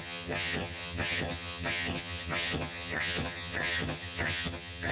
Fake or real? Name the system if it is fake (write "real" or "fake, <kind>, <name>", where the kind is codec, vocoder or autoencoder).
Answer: fake, vocoder, HiFi-GAN